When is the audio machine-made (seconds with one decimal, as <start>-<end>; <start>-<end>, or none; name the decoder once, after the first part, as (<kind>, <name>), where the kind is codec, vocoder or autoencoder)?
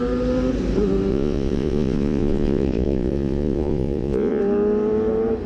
1.1-4.4 (vocoder, Vocos)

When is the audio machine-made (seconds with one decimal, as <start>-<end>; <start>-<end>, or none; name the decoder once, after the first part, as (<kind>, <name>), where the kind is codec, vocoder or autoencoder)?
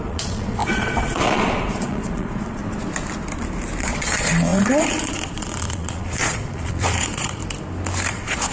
0.0-2.6 (vocoder, Vocos); 3.8-7.4; 8.1-8.5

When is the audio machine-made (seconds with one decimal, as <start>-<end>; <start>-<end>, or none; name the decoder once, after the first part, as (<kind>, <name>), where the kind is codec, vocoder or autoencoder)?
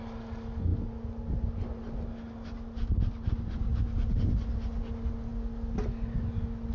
none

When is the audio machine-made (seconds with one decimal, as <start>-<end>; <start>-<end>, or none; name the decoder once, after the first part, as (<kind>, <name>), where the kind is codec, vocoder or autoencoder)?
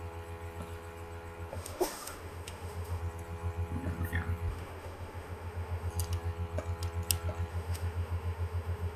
1.5-3.0 (autoencoder, DAC-VAE); 4.5-5.9; 7.5-9.0